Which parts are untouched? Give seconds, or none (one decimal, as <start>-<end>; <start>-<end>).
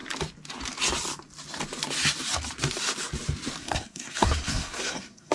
0.0-3.6